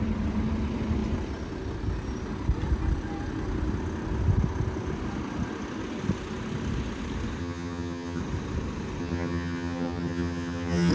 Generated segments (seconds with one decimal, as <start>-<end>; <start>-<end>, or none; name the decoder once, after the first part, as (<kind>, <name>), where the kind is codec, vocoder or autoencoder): 7.4-8.2 (vocoder, HiFi-GAN); 9.0-10.9